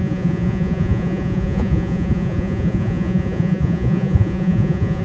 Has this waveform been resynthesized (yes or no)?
yes